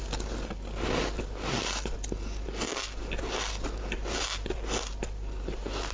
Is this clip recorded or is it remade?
recorded